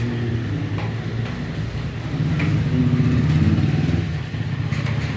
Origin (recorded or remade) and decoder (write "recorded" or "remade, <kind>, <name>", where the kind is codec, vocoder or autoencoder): recorded